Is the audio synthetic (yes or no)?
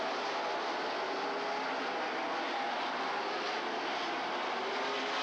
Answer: no